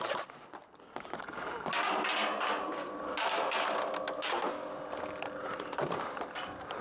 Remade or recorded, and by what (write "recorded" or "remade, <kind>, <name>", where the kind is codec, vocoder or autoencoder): recorded